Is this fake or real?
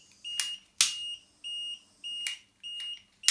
real